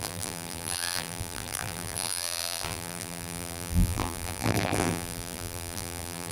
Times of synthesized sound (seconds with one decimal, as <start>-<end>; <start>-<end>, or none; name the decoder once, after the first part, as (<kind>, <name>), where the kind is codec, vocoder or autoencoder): 0.0-6.3 (vocoder, BigVGAN v2)